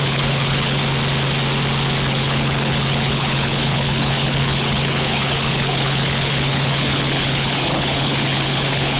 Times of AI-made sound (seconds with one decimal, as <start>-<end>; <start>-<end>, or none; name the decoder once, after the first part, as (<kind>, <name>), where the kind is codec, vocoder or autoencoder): 0.0-0.8 (codec, HILCodec); 2.1-9.0